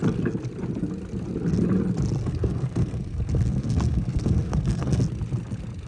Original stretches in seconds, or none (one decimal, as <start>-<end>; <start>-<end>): 0.0-2.2; 5.0-5.9